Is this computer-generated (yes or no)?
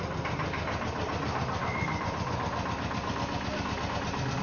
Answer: no